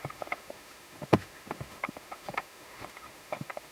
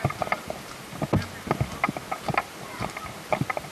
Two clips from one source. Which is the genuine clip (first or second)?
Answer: second